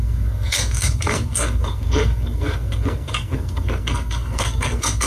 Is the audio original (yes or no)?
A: no